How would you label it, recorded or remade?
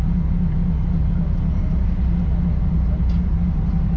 recorded